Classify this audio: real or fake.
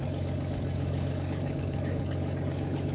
fake